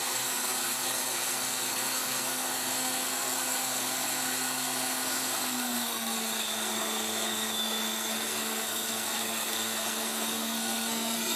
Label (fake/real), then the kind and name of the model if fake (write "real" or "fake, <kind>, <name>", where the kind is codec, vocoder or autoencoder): fake, codec, SNAC